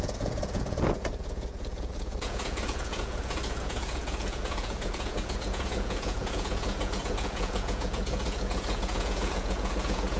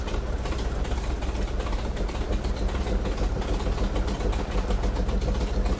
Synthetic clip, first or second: first